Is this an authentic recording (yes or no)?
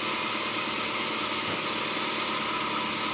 yes